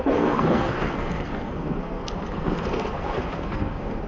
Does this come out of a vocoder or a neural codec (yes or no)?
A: yes